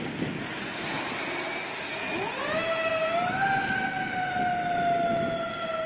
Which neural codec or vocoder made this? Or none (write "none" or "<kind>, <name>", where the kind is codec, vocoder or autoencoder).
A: none